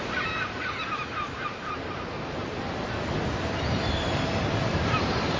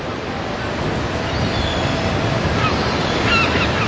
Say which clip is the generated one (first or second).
first